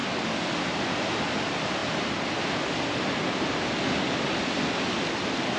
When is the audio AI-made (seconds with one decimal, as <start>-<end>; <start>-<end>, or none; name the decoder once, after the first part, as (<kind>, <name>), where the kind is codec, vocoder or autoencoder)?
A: none